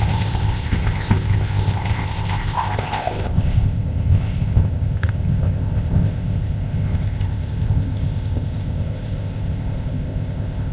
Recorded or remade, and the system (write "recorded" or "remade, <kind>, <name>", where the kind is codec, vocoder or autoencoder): remade, codec, ZipCodec